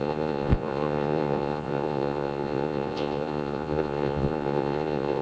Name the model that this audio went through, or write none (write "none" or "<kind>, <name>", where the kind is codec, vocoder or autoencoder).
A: vocoder, Vocos